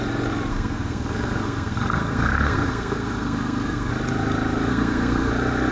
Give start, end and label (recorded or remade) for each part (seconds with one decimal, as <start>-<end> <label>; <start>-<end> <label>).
0.0-0.5 recorded; 0.5-3.9 remade; 3.9-4.7 recorded; 4.7-5.3 remade; 5.3-5.7 recorded